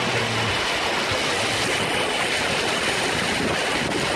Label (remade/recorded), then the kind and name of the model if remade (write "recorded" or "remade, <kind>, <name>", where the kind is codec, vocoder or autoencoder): recorded